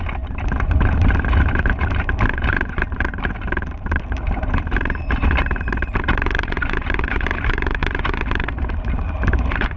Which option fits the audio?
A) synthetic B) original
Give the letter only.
A